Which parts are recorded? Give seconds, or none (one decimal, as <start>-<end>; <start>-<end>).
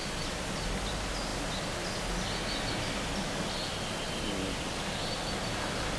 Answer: 0.0-6.0